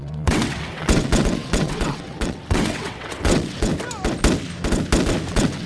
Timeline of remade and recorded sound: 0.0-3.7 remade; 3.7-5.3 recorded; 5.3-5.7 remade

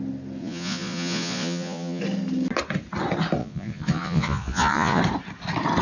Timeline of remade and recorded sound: 0.0-0.4 recorded; 0.4-2.0 remade; 2.0-3.4 recorded; 3.4-5.0 remade; 5.0-5.8 recorded